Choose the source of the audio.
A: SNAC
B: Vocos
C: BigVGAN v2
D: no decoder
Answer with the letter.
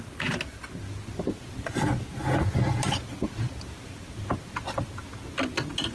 D